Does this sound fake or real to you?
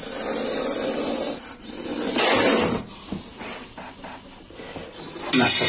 real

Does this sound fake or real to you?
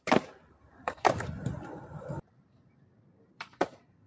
fake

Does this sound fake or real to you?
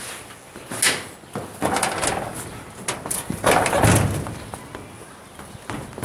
real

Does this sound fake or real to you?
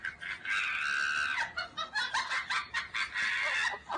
real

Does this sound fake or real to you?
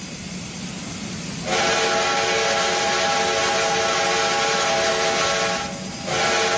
real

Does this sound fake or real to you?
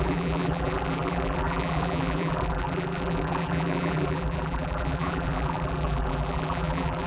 fake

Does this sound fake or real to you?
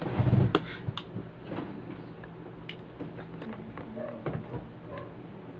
real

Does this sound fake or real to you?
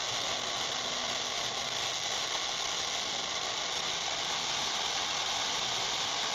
real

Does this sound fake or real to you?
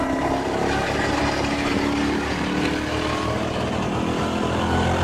real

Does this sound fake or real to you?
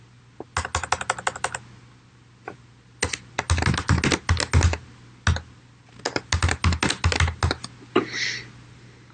real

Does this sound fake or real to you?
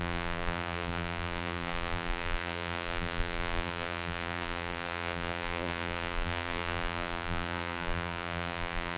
fake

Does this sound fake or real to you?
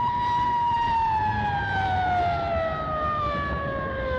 real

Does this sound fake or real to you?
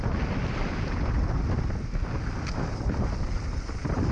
real